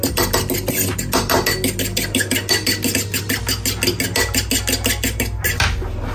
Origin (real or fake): real